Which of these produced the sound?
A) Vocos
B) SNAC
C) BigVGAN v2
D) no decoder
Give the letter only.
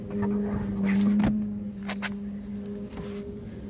D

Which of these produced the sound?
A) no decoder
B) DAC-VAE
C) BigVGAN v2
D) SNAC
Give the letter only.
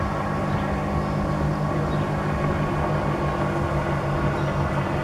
A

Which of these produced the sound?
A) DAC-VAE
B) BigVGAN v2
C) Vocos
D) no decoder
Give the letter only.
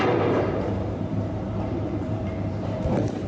B